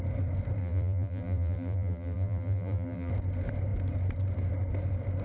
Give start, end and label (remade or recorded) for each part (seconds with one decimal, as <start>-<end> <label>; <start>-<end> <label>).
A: 0.0-0.6 recorded; 0.6-3.1 remade; 3.1-5.2 recorded